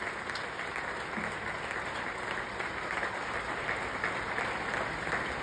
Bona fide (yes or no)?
yes